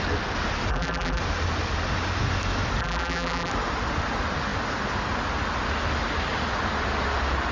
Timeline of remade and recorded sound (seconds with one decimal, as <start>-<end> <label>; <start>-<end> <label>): 0.0-0.7 recorded; 0.7-1.2 remade; 1.2-2.8 recorded; 2.8-3.5 remade; 3.5-7.5 recorded